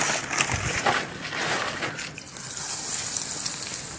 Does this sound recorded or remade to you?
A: recorded